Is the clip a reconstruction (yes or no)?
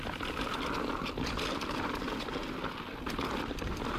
no